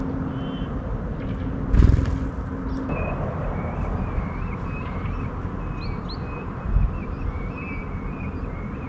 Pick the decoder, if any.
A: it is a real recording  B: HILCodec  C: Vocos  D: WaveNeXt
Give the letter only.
A